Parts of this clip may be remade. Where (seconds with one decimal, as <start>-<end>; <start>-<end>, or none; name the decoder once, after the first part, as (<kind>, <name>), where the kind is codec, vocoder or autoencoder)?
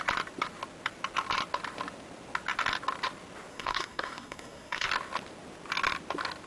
3.5-4.9 (codec, SNAC)